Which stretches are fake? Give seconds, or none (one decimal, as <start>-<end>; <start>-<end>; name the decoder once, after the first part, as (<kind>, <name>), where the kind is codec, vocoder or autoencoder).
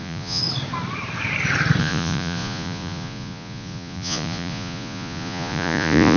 0.0-0.4 (vocoder, Vocos); 1.8-6.2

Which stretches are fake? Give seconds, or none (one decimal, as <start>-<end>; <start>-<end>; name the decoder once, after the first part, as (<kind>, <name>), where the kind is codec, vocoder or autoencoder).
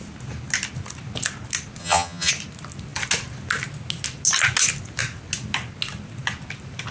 1.8-2.3 (vocoder, HiFi-GAN)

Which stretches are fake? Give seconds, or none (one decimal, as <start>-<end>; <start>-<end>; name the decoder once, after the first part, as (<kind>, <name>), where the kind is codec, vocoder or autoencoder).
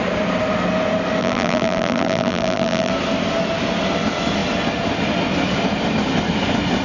1.2-2.9 (vocoder, BigVGAN v2)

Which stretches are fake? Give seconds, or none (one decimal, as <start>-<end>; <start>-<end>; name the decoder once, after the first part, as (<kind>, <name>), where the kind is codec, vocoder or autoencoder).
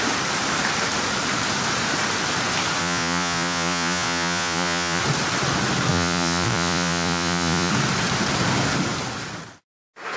2.8-5.0 (vocoder, Vocos); 5.9-7.7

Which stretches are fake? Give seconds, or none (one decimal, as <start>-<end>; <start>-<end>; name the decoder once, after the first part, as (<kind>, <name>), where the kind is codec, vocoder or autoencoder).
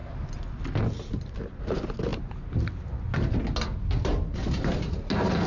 none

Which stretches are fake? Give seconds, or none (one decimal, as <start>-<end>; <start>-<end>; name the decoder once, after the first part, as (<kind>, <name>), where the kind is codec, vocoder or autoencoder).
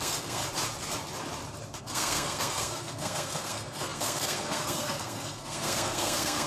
0.0-0.4 (codec, SNAC); 1.8-6.5